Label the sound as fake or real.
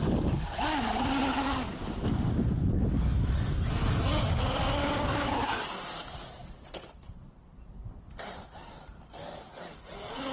real